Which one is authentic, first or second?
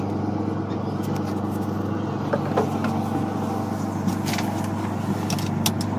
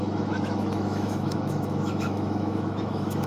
first